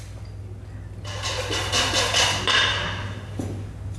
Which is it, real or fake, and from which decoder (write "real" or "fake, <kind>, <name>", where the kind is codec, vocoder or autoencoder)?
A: real